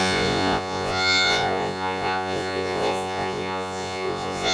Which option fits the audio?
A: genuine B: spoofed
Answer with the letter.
B